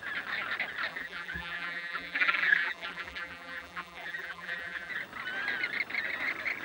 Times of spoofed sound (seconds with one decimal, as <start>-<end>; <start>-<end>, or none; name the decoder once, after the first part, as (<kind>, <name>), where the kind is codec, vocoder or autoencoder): 0.9-4.9 (vocoder, BigVGAN v2)